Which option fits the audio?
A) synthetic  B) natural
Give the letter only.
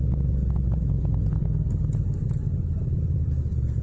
B